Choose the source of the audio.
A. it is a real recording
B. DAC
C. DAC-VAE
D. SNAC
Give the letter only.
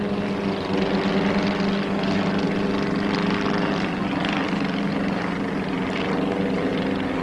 A